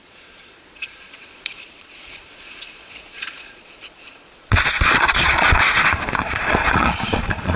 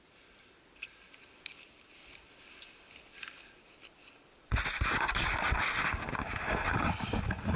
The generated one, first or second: first